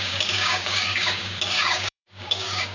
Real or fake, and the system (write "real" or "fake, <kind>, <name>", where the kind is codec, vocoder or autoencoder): fake, codec, DAC